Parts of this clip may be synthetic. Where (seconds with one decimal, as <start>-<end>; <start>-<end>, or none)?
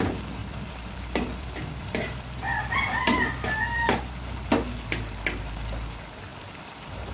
0.4-4.0; 6.3-7.1